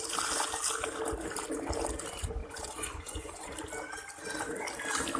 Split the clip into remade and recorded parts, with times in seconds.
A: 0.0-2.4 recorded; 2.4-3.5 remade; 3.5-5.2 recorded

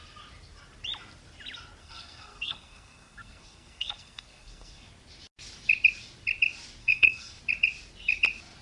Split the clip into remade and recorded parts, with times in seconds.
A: 0.0-1.8 recorded; 1.8-4.9 remade; 4.9-6.8 recorded; 6.8-7.4 remade; 7.4-8.6 recorded

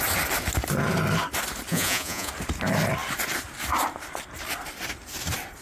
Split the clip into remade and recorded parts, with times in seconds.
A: 0.0-1.7 recorded; 1.7-2.3 remade; 2.3-5.6 recorded

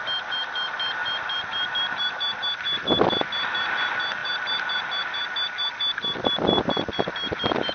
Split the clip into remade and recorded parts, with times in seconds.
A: 0.0-7.7 recorded

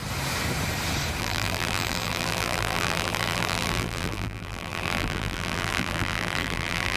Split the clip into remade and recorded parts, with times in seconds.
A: 0.0-1.2 recorded; 1.2-7.0 remade

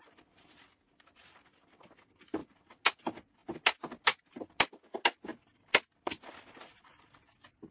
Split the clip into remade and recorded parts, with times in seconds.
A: 0.0-7.7 recorded